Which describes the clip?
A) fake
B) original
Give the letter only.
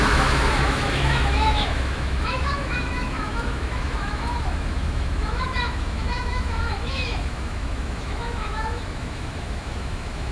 A